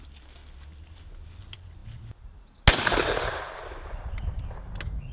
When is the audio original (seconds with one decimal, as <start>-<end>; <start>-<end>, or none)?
0.0-5.1